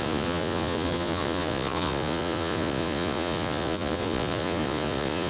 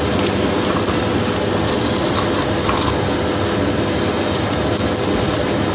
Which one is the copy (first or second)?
first